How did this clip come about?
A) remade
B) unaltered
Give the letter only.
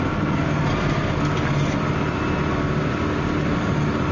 B